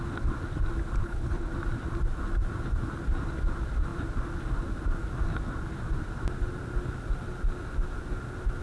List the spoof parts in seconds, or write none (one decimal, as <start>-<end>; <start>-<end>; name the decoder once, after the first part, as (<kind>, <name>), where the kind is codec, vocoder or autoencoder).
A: 1.0-1.5 (codec, HILCodec)